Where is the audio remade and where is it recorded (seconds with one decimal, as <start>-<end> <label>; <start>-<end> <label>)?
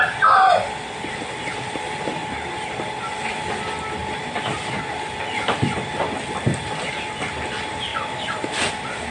0.0-2.2 recorded; 2.2-2.9 remade; 2.9-4.0 recorded; 4.0-5.6 remade; 5.6-7.9 recorded; 7.9-8.7 remade; 8.7-9.1 recorded